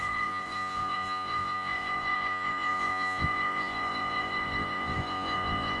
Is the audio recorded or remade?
remade